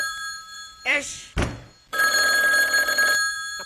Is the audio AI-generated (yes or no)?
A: yes